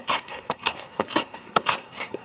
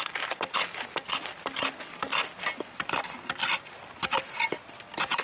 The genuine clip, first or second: second